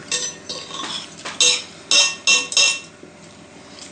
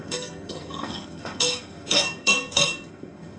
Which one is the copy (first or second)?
second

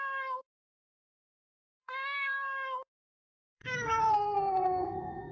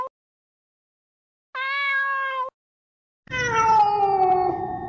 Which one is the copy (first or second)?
first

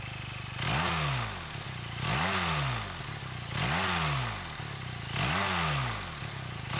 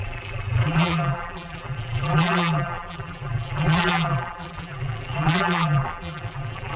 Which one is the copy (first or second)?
second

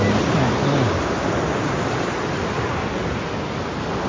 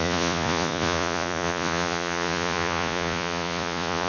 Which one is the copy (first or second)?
second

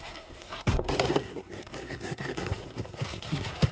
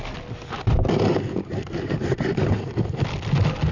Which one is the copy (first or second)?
first